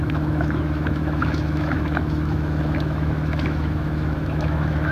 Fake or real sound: fake